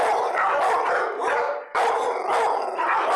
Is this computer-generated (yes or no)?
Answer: no